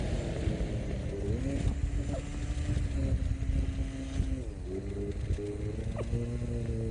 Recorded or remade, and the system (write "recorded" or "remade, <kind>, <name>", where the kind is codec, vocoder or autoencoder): recorded